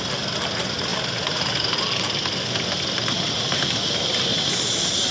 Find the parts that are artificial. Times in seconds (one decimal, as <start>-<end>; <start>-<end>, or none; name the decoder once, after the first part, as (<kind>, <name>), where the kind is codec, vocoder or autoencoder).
none